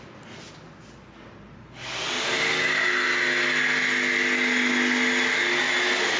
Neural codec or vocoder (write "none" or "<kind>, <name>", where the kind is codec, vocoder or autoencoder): none